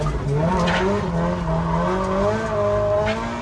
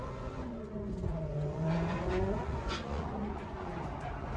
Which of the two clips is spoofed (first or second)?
second